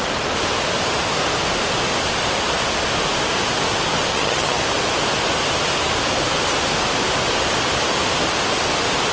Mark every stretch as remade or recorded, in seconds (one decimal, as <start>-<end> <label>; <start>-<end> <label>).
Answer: 0.0-4.1 recorded; 4.1-4.6 remade; 4.6-9.1 recorded